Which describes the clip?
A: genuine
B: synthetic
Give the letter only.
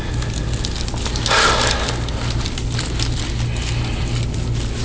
A